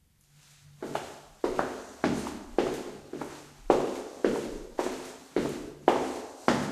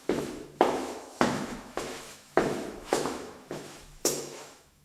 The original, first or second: first